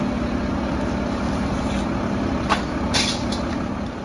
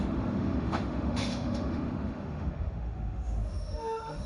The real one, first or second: first